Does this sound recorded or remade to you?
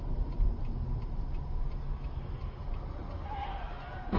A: recorded